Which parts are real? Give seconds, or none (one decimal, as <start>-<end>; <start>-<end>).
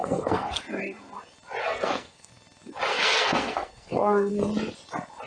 0.6-1.6; 2.3-2.9; 4.3-5.3